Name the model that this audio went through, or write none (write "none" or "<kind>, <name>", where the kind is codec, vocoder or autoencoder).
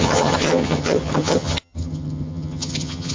vocoder, HiFi-GAN